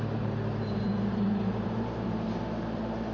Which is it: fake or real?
fake